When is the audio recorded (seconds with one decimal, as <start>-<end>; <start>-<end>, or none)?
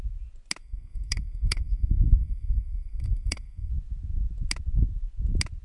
0.0-0.6; 3.7-5.6